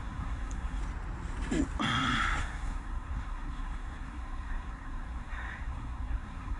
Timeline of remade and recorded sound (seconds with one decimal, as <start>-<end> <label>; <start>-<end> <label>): 0.0-0.8 remade; 0.8-2.4 recorded; 2.4-6.6 remade